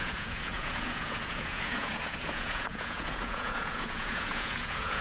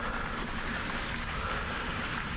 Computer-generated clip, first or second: first